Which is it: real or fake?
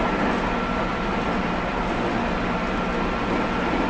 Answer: real